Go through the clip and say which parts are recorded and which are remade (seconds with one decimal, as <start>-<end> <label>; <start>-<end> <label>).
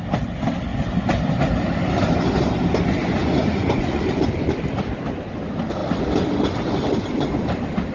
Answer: 0.0-3.2 recorded; 3.2-4.0 remade; 4.0-7.9 recorded